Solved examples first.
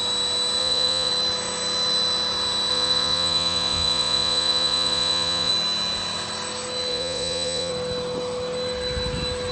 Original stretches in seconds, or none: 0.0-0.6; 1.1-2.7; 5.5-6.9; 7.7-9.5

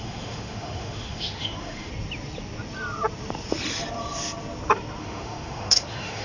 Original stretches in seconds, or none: 1.9-5.0

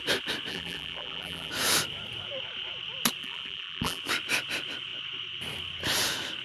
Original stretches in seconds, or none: 0.0-0.5; 1.5-3.2; 4.0-6.4

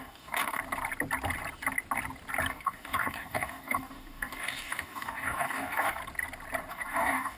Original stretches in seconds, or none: 0.6-2.5; 6.0-6.7

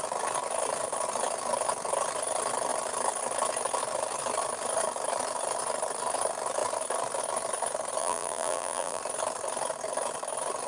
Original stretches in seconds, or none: 0.0-8.0; 9.0-10.7

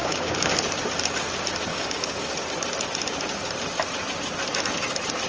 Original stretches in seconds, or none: 0.5-1.7; 2.3-5.3

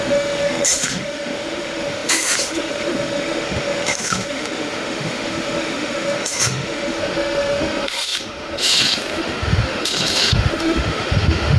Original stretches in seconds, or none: none

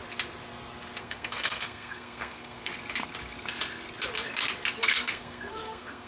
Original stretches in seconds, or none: 0.0-1.0; 2.7-4.8